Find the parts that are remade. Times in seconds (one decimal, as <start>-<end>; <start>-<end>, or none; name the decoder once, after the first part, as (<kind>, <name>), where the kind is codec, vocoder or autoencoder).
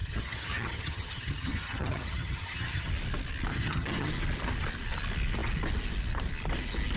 0.0-2.9 (vocoder, HiFi-GAN); 3.5-4.1